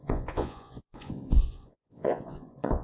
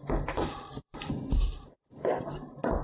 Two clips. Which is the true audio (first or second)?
second